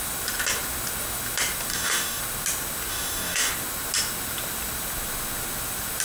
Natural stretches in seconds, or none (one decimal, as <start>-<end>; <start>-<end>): 0.0-1.7; 2.2-2.9; 3.5-6.0